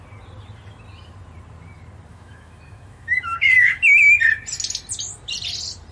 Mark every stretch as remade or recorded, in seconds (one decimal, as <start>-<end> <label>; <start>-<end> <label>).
0.0-2.1 recorded; 2.1-4.2 remade; 4.2-5.9 recorded